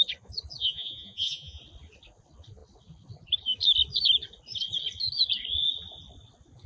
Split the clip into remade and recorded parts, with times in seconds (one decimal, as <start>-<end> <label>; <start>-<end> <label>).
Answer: 0.0-0.6 recorded; 0.6-1.6 remade; 1.6-6.7 recorded